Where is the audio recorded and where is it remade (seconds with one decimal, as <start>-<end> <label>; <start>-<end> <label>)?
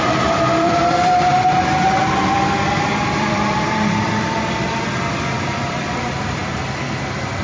0.0-1.3 remade; 1.3-3.1 recorded; 3.1-6.4 remade; 6.4-7.4 recorded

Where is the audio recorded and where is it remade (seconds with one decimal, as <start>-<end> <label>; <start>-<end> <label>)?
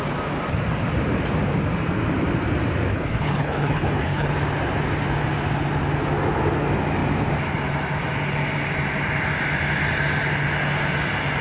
0.0-2.9 recorded; 2.9-4.3 remade; 4.3-11.4 recorded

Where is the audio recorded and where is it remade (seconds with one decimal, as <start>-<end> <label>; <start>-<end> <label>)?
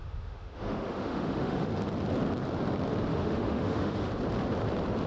0.0-1.7 remade; 1.7-3.1 recorded; 3.1-4.1 remade; 4.1-5.1 recorded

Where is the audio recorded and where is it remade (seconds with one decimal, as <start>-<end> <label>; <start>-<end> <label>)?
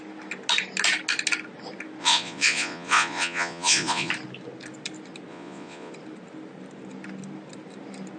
0.0-2.0 recorded; 2.0-4.1 remade; 4.1-5.3 recorded; 5.3-5.9 remade; 5.9-8.2 recorded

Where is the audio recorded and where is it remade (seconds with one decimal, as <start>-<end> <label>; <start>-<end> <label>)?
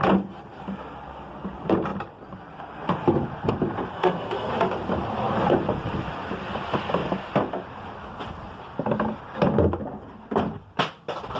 0.0-3.9 recorded; 3.9-4.5 remade; 4.5-11.4 recorded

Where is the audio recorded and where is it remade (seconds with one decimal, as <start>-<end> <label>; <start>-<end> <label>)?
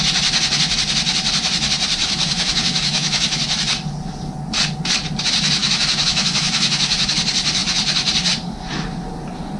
0.0-2.0 recorded; 2.0-3.4 remade; 3.4-5.6 recorded; 5.6-7.1 remade; 7.1-9.6 recorded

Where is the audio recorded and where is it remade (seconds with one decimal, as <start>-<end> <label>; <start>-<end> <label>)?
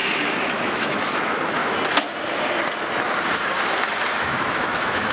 0.0-1.6 remade; 1.6-4.2 recorded; 4.2-5.1 remade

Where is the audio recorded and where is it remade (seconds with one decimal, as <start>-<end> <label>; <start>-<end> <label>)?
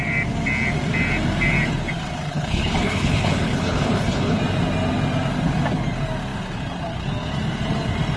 0.0-2.3 recorded; 2.3-4.4 remade; 4.4-8.2 recorded